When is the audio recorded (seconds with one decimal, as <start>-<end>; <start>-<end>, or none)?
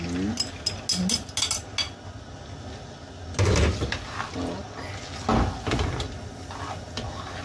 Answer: 0.0-7.4